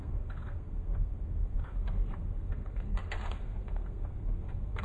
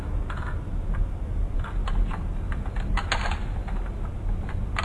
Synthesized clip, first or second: first